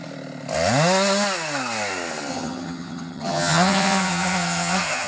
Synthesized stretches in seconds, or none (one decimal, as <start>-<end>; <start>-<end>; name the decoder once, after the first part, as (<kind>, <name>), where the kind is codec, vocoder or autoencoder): 2.3-5.1 (vocoder, HiFi-GAN)

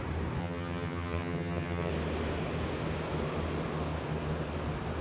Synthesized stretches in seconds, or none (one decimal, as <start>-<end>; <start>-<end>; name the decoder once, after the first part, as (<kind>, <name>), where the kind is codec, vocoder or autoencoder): 0.4-1.9 (vocoder, HiFi-GAN)

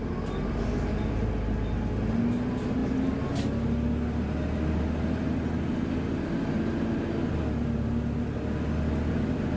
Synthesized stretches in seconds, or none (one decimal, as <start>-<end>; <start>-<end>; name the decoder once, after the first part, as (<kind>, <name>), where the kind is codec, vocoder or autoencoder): none

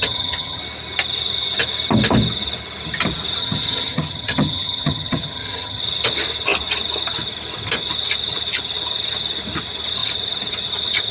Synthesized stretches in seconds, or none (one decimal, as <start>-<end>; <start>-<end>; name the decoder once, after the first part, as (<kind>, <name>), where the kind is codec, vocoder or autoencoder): 0.0-0.6 (vocoder, HiFi-GAN); 3.4-5.8

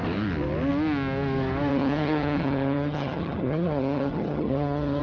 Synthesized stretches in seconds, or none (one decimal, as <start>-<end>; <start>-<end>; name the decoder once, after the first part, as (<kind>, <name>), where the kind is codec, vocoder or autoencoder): 1.7-5.0 (vocoder, HiFi-GAN)